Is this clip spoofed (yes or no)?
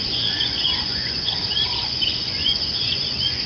yes